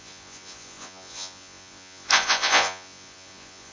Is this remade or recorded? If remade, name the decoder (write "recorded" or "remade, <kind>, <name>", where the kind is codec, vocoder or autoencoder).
remade, vocoder, Vocos